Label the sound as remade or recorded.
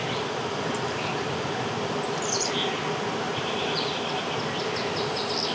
recorded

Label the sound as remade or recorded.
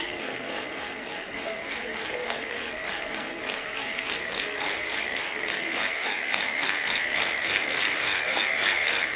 remade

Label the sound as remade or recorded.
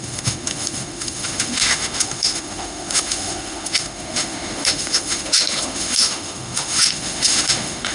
remade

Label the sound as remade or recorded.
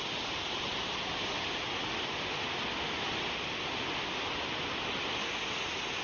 recorded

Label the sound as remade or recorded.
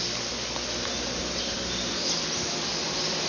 recorded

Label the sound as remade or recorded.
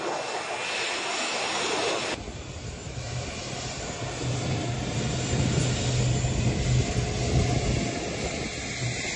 recorded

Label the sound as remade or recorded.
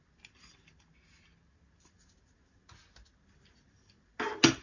recorded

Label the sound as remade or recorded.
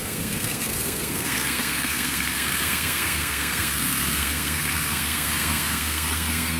remade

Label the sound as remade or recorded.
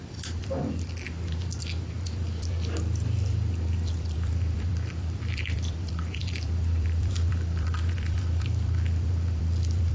remade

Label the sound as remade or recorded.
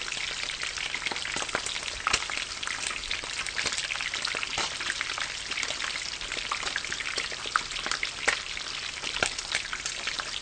recorded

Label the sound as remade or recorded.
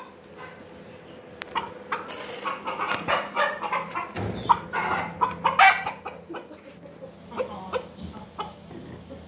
recorded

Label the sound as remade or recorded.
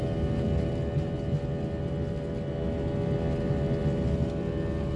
recorded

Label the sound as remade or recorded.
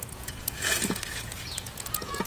remade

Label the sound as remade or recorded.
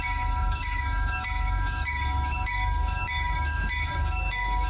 remade